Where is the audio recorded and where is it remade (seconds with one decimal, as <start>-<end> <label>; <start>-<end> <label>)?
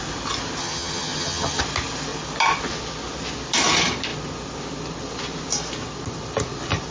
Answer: 0.0-0.6 recorded; 0.6-1.6 remade; 1.6-6.9 recorded